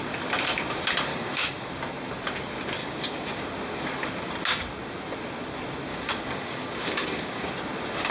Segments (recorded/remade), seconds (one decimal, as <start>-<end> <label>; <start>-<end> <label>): 0.0-1.1 recorded; 1.1-1.7 remade; 1.7-2.8 recorded; 2.8-3.4 remade; 3.4-5.9 recorded; 5.9-7.5 remade; 7.5-8.1 recorded